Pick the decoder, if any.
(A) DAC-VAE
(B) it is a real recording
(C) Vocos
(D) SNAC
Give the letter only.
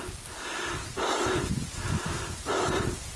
B